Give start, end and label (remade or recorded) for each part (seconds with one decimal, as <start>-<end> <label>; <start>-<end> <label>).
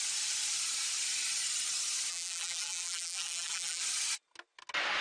0.0-2.1 recorded; 2.1-3.8 remade; 3.8-5.0 recorded